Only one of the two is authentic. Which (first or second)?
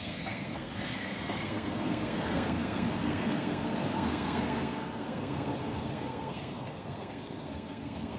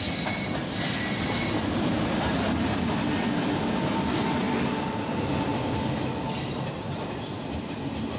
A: second